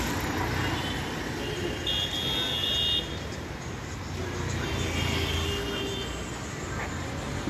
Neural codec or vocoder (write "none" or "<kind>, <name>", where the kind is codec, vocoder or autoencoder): none